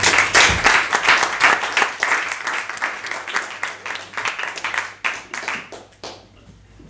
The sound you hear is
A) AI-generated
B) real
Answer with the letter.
B